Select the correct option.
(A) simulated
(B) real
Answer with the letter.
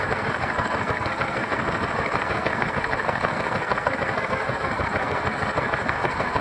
A